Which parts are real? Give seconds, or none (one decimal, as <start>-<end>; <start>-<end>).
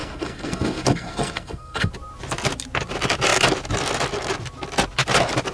1.9-5.5